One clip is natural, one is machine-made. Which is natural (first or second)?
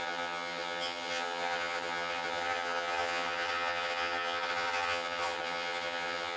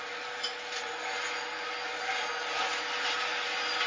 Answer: second